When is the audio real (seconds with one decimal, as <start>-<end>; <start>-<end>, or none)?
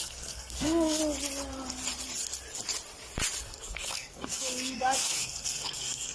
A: 1.0-3.4